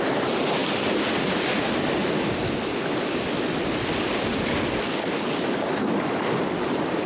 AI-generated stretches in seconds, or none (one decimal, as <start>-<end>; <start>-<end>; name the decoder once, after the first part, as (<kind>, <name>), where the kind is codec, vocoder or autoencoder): none